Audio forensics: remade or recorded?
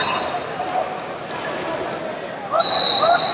recorded